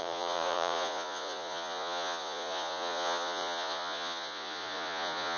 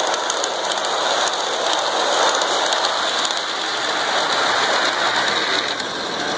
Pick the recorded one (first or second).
second